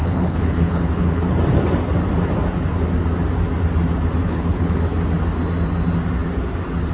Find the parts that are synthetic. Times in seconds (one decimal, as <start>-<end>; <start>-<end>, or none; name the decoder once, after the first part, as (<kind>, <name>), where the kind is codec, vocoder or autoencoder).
0.0-1.4 (codec, HILCodec); 4.2-4.8